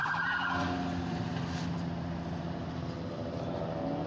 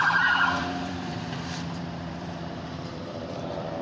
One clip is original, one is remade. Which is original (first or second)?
first